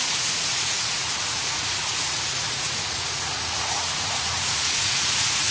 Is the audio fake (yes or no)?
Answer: yes